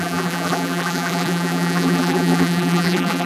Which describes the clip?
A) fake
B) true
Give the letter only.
A